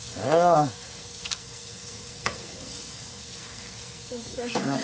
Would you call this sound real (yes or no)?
no